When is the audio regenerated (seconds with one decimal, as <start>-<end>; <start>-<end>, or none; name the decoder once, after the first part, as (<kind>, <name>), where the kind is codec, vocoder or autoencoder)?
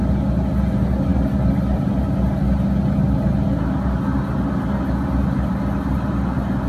none